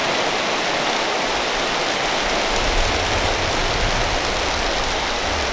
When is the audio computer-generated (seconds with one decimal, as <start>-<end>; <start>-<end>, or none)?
none